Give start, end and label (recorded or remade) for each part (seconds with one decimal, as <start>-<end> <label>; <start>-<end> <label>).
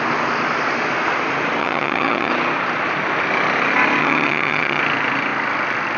0.0-1.6 recorded; 1.6-2.3 remade; 2.3-4.0 recorded; 4.0-4.8 remade; 4.8-6.0 recorded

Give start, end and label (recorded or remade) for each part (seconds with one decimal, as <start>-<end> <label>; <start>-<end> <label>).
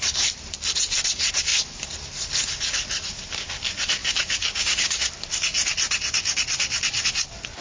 0.0-4.0 recorded; 4.0-5.0 remade; 5.0-7.6 recorded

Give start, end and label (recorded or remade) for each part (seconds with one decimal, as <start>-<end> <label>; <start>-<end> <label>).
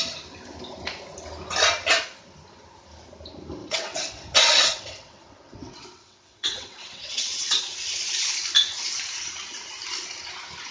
0.0-3.6 recorded; 3.6-7.6 remade; 7.6-10.7 recorded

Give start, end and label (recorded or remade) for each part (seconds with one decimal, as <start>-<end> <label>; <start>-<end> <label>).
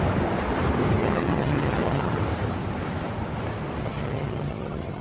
0.0-1.0 recorded; 1.0-2.2 remade; 2.2-3.8 recorded; 3.8-5.0 remade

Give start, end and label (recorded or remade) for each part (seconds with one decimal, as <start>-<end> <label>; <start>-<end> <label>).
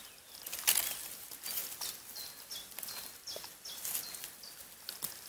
0.0-5.3 recorded